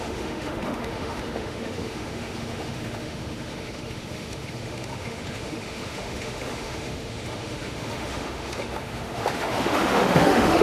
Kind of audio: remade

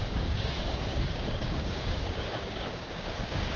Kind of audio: remade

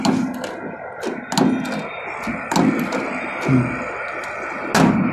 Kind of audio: recorded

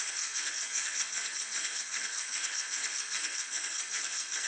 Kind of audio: remade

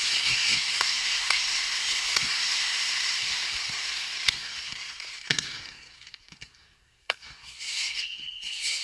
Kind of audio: remade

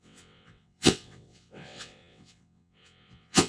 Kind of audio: remade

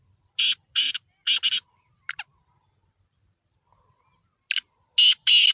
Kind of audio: recorded